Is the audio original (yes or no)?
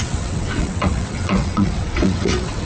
no